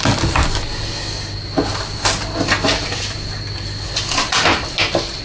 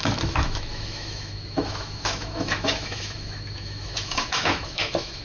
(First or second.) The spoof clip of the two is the second